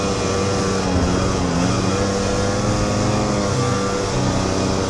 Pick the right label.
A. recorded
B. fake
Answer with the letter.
A